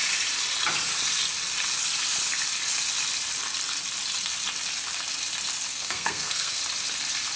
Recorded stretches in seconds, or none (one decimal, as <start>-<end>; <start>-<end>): 0.0-5.7; 6.6-7.4